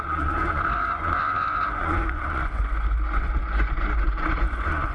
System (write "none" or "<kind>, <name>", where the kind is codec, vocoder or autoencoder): vocoder, Vocos